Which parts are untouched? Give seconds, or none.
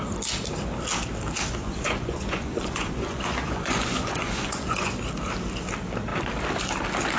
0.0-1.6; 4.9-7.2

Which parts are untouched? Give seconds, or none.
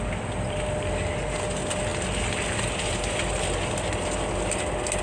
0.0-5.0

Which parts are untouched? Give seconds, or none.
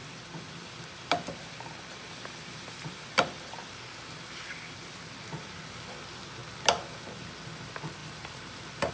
3.8-6.4; 7.0-8.0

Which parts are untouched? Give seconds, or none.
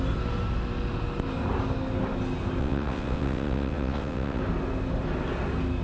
0.0-2.6; 4.4-5.8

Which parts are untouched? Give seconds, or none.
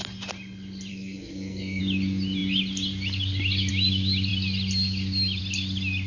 0.0-0.9; 1.8-6.1